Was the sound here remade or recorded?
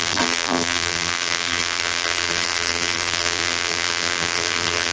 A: remade